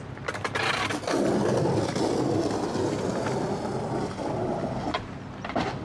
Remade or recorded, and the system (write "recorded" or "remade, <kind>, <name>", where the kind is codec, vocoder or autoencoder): recorded